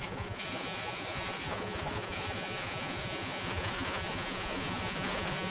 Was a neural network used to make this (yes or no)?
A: yes